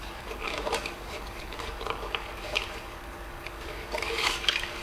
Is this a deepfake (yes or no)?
yes